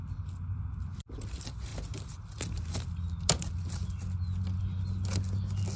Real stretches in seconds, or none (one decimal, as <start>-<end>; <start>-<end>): 0.0-5.8